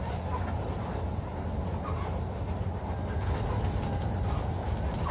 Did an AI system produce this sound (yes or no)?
no